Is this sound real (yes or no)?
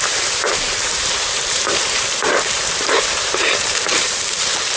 no